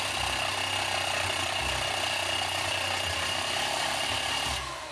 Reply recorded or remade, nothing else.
recorded